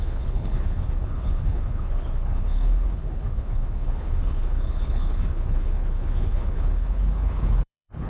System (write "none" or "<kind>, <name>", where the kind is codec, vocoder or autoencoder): codec, HILCodec